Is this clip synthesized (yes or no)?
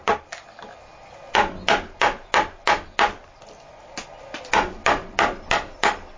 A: no